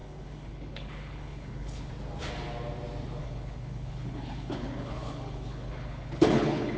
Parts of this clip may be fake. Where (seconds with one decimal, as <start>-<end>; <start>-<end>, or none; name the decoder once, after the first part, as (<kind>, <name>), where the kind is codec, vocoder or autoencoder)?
0.0-1.9 (codec, HILCodec); 3.2-6.8